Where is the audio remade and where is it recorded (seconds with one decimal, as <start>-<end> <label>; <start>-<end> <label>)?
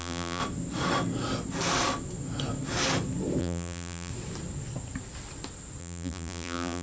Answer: 0.0-0.4 remade; 0.4-3.4 recorded; 3.4-4.1 remade; 4.1-5.8 recorded; 5.8-6.8 remade